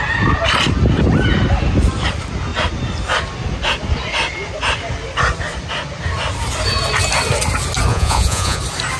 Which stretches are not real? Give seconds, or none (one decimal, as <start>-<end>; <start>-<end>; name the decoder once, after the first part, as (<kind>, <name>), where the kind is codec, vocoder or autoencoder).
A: 7.9-8.6 (vocoder, Vocos)